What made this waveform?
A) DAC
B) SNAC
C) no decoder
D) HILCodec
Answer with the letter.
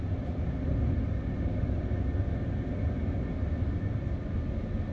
C